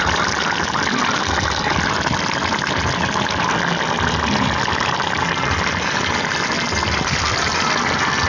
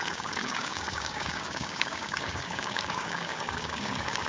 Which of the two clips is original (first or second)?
first